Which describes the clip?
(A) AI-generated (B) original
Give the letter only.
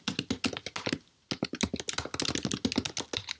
B